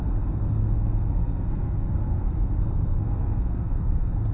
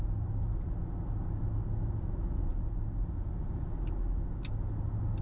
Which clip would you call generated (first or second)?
first